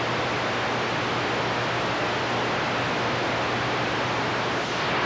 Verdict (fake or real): real